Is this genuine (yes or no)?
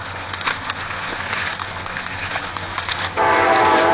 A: no